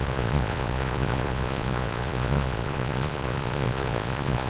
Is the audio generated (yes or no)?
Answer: yes